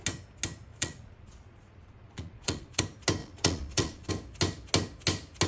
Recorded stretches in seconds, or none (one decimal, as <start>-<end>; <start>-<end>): 0.0-0.7; 2.8-3.2; 4.1-5.5